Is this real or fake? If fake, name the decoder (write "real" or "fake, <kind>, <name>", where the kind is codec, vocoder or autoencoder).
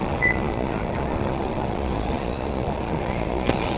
fake, vocoder, Vocos